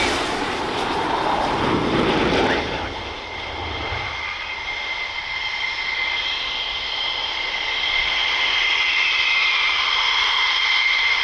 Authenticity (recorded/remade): recorded